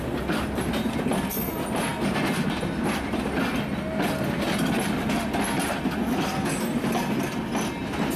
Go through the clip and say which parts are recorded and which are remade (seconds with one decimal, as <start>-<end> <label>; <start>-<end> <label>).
0.0-8.2 recorded

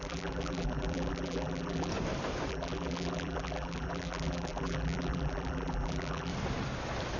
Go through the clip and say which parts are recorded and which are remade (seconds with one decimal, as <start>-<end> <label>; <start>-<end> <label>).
0.0-1.9 remade; 1.9-2.5 recorded; 2.5-6.3 remade; 6.3-7.2 recorded

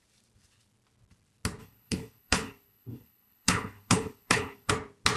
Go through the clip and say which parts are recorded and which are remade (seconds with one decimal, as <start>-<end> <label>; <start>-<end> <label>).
0.0-1.6 recorded; 1.6-4.7 remade; 4.7-5.2 recorded